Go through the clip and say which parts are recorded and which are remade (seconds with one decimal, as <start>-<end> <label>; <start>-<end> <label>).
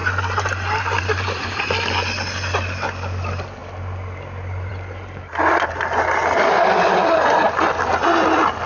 0.0-1.7 remade; 1.7-8.7 recorded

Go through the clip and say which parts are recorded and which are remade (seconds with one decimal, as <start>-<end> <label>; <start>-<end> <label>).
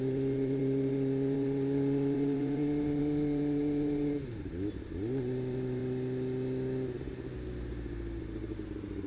0.0-5.8 remade; 5.8-8.2 recorded; 8.2-9.1 remade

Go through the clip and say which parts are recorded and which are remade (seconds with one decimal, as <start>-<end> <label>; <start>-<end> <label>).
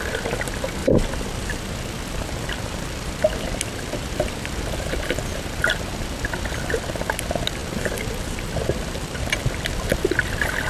0.0-0.8 recorded; 0.8-1.6 remade; 1.6-7.6 recorded; 7.6-9.2 remade; 9.2-10.7 recorded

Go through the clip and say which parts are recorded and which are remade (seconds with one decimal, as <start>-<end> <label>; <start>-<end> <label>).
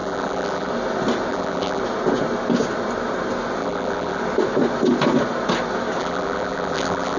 0.0-0.7 remade; 0.7-1.3 recorded; 1.3-1.8 remade; 1.8-3.6 recorded; 3.6-4.2 remade; 4.2-6.0 recorded; 6.0-7.2 remade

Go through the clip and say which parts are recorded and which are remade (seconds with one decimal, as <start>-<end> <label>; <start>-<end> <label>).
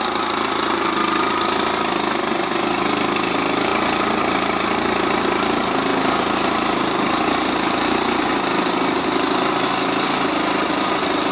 0.0-11.3 recorded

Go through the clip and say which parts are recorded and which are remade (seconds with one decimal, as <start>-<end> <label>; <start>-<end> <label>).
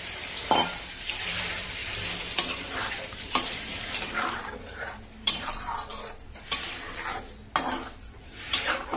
0.0-1.8 remade; 1.8-2.6 recorded; 2.6-5.9 remade; 5.9-8.2 recorded; 8.2-9.0 remade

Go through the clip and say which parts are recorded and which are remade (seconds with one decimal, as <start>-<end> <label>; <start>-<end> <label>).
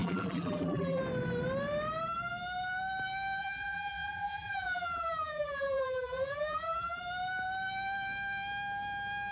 0.0-1.0 remade; 1.0-3.4 recorded; 3.4-7.0 remade; 7.0-9.3 recorded